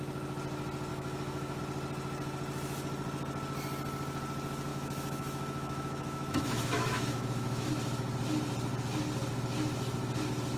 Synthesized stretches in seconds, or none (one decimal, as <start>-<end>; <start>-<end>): 0.9-1.6; 4.7-7.7